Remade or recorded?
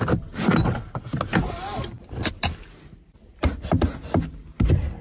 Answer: recorded